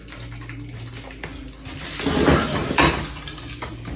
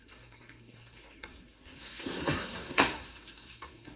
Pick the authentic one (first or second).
first